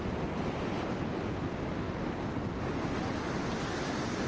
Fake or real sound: real